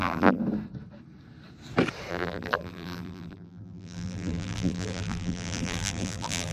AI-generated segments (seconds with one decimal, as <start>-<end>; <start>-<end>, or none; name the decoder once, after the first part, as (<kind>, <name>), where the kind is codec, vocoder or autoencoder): 0.0-0.4 (vocoder, BigVGAN v2); 2.1-6.5